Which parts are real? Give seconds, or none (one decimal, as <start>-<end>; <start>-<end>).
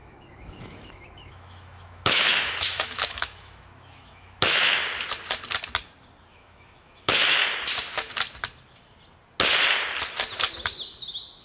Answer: 4.8-6.3; 7.4-11.4